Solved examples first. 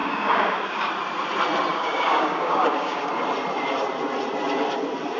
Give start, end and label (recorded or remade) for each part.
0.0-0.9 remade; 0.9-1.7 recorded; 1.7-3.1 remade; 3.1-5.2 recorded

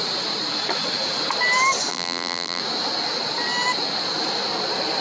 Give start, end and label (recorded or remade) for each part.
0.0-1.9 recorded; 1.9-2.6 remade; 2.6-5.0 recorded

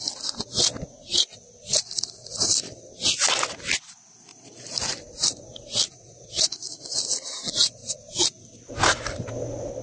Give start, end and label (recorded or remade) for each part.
0.0-4.3 recorded; 4.3-4.9 remade; 4.9-9.8 recorded

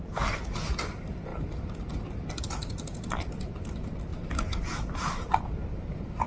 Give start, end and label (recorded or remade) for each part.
0.0-6.3 recorded